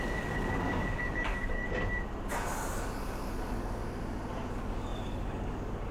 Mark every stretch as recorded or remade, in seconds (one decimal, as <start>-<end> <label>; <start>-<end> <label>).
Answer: 0.0-1.6 remade; 1.6-2.7 recorded; 2.7-3.8 remade; 3.8-4.5 recorded; 4.5-5.9 remade

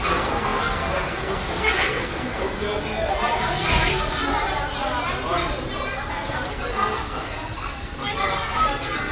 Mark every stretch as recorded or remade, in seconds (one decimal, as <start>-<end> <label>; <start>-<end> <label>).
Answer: 0.0-4.3 remade; 4.3-6.1 recorded; 6.1-9.1 remade

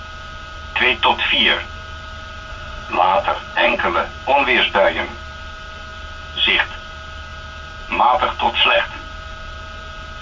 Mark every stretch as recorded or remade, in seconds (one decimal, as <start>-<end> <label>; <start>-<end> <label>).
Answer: 0.0-2.5 recorded; 2.5-3.8 remade; 3.8-10.2 recorded

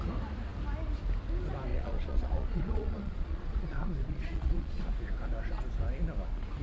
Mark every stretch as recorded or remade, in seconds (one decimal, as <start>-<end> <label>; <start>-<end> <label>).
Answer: 0.0-1.7 recorded; 1.7-4.8 remade; 4.8-6.6 recorded

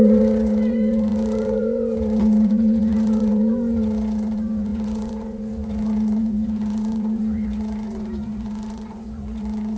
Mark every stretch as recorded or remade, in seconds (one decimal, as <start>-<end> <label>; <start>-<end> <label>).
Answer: 0.0-9.8 remade

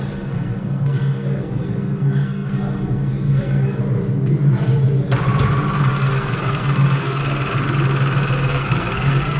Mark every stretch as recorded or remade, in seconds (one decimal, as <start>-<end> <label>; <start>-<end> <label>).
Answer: 0.0-3.8 remade; 3.8-5.8 recorded; 5.8-7.2 remade; 7.2-8.5 recorded; 8.5-9.4 remade

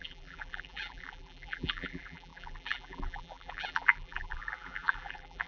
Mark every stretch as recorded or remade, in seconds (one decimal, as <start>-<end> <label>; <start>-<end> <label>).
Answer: 0.0-5.5 remade